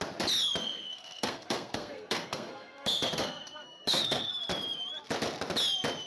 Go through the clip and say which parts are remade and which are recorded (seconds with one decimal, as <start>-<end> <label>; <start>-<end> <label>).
0.0-0.6 recorded; 0.6-4.3 remade; 4.3-6.1 recorded